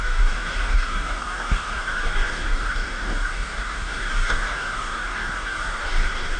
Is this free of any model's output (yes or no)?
no